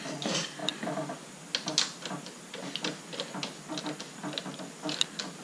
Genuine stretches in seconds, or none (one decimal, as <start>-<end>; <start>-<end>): 0.0-5.4